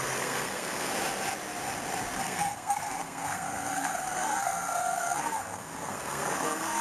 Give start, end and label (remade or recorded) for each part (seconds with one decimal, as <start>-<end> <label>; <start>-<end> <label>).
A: 0.0-0.9 remade; 0.9-2.2 recorded; 2.2-6.8 remade